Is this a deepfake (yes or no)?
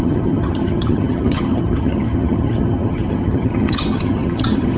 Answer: yes